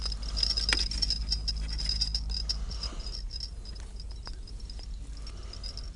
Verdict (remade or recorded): recorded